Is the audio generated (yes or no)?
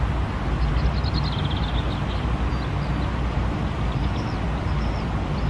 no